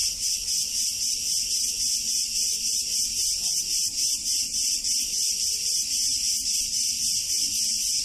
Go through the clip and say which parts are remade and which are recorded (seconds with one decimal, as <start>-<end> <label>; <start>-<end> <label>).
0.0-8.0 remade